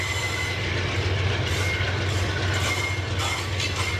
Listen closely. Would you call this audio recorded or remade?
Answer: recorded